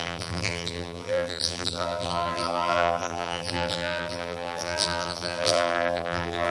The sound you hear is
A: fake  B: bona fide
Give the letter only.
A